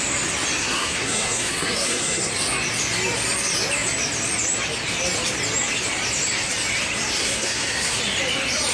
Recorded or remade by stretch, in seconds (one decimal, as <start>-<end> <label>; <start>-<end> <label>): 0.0-0.6 recorded; 0.6-2.3 remade; 2.3-7.2 recorded; 7.2-8.0 remade; 8.0-8.7 recorded